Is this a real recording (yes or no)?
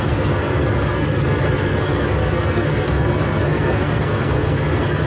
no